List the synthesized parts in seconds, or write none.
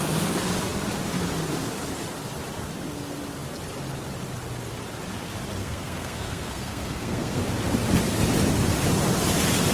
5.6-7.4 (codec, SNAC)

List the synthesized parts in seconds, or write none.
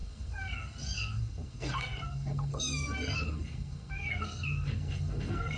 0.0-5.6 (codec, SNAC)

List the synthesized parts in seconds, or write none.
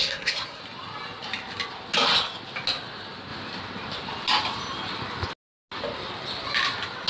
0.0-0.6 (codec, SNAC)